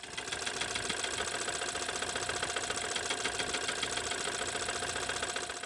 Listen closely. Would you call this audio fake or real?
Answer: real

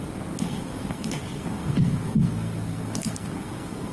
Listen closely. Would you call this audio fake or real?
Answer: fake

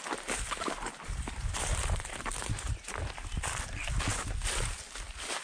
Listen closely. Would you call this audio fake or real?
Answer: real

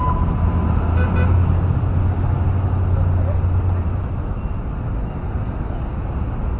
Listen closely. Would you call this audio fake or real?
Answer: real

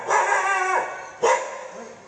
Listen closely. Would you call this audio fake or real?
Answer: real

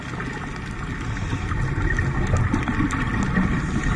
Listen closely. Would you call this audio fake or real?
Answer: real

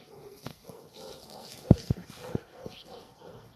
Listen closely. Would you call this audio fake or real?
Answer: fake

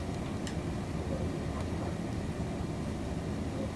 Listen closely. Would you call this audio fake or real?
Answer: real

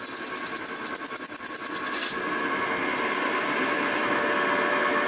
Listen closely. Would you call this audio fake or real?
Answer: real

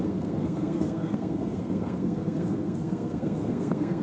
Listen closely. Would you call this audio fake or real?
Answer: fake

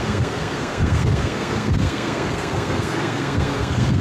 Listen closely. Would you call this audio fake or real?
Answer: fake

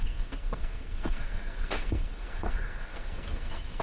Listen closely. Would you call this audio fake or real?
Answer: fake